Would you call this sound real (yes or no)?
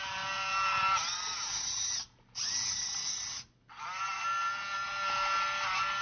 yes